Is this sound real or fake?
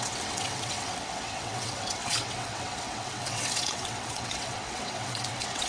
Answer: fake